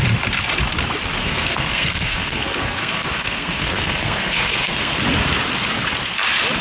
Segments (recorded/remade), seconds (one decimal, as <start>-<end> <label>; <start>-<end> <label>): 0.0-1.2 recorded; 1.2-5.0 remade; 5.0-6.6 recorded